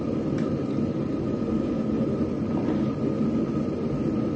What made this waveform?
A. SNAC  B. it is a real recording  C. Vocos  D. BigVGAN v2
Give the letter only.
B